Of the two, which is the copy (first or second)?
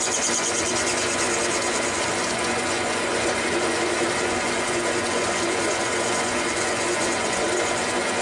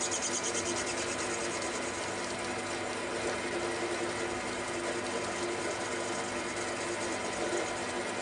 first